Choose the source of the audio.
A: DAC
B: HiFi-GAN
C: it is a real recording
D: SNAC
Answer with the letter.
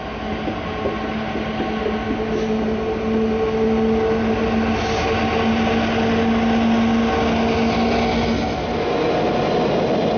C